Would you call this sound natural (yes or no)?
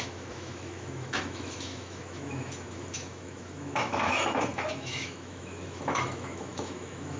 no